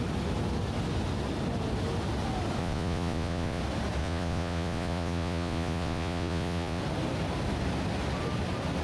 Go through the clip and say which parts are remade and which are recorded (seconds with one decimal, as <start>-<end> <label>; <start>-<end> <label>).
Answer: 0.0-2.6 recorded; 2.6-3.6 remade; 3.6-4.0 recorded; 4.0-6.8 remade; 6.8-8.8 recorded